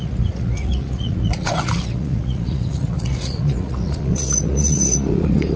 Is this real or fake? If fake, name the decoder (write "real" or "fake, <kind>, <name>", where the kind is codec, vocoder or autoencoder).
fake, vocoder, Vocos